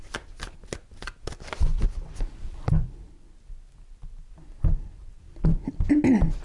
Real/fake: real